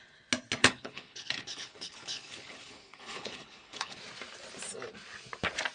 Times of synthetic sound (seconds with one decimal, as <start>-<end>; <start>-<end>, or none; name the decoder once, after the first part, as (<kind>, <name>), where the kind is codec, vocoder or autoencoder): 0.6-4.0 (codec, HILCodec)